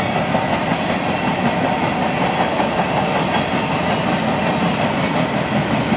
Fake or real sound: real